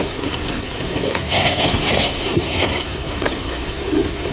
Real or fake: fake